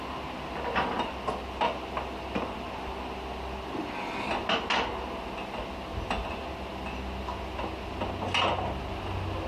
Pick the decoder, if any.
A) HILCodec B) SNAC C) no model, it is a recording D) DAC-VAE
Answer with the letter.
C